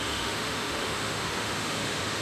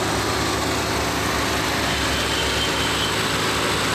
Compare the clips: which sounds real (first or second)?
second